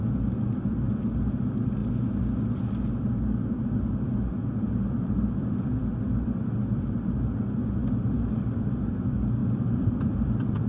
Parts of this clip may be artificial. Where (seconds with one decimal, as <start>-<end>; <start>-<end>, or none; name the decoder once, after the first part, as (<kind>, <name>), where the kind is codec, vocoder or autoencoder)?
5.8-6.4 (vocoder, BigVGAN v2); 9.4-10.7